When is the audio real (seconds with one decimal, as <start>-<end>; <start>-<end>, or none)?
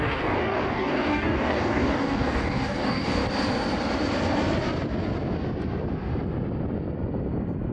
3.2-7.7